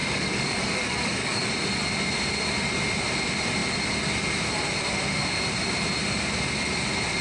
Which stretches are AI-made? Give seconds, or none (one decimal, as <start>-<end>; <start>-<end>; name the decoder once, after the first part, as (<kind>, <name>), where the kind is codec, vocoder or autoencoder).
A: 0.0-1.5 (codec, DAC)